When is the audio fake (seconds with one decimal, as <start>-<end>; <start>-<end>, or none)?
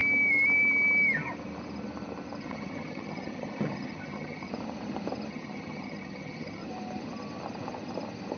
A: 2.4-4.5; 5.3-6.6